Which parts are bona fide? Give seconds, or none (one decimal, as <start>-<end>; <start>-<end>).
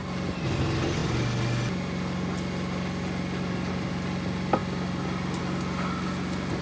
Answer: 0.0-6.6